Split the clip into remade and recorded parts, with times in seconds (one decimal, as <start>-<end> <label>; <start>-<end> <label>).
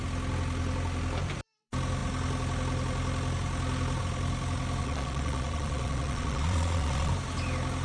0.0-4.8 recorded; 4.8-7.1 remade; 7.1-7.8 recorded